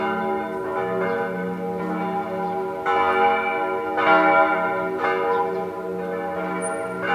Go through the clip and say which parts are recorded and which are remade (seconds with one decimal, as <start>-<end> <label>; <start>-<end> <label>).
0.0-7.1 recorded